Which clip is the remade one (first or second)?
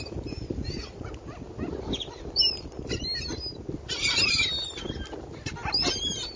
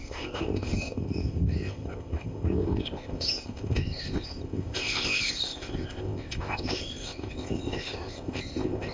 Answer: second